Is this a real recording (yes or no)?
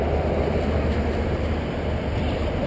yes